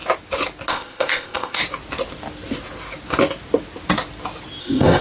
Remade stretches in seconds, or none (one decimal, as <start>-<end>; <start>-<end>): 0.7-1.6; 4.6-5.0